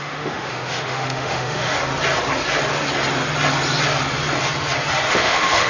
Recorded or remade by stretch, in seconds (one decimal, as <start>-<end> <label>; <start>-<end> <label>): 0.0-1.8 remade; 1.8-5.1 recorded; 5.1-5.7 remade